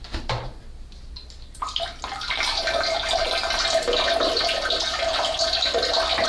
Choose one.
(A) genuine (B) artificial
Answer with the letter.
A